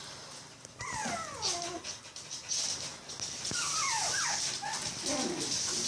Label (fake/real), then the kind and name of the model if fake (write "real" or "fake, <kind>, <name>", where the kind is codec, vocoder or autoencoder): real